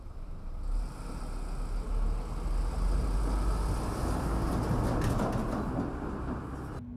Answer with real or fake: real